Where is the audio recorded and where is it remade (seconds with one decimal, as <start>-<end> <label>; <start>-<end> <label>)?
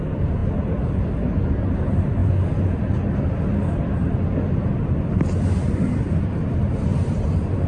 0.0-7.7 recorded